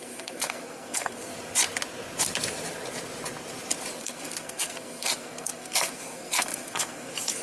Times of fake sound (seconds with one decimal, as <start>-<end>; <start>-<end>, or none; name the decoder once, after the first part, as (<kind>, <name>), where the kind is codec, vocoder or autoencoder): 0.0-1.3 (codec, SNAC); 4.0-7.4